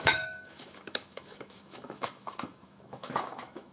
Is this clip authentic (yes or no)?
no